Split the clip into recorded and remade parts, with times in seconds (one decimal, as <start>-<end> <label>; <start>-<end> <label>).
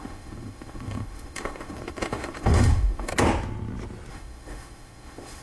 0.0-3.1 remade; 3.1-4.1 recorded; 4.1-5.4 remade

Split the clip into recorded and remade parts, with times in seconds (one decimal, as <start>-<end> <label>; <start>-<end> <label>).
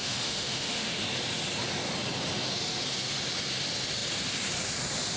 0.0-1.0 remade; 1.0-5.2 recorded